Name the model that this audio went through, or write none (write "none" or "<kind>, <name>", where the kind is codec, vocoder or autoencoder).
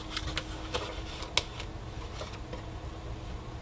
none